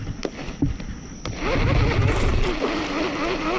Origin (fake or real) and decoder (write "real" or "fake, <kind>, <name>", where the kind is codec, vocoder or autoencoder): real